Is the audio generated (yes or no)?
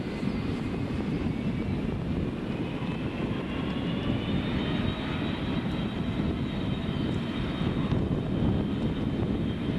no